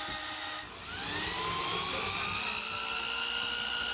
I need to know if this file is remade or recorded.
recorded